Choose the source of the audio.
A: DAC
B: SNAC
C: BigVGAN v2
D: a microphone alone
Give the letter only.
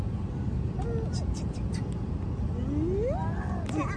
D